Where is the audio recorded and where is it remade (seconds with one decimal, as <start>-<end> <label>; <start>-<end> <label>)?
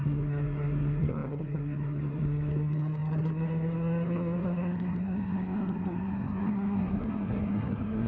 0.0-8.1 remade